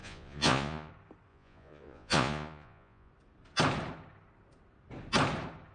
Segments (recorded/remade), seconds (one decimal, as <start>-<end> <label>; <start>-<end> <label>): 0.0-0.9 remade; 0.9-1.3 recorded; 1.3-3.1 remade; 3.1-5.7 recorded